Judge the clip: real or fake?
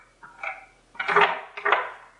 real